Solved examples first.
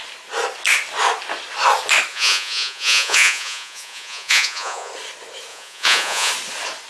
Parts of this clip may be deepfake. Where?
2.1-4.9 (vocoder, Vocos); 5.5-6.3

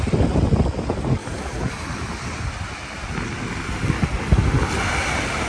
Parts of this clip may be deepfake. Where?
none

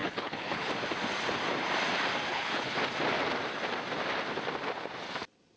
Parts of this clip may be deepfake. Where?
0.0-0.7 (codec, HILCodec); 2.3-2.8

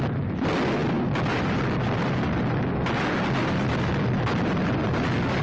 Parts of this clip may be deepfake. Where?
none

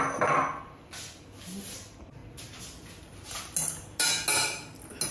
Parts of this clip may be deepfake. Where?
none

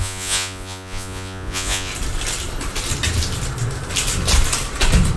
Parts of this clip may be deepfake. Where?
0.0-1.9 (vocoder, Vocos)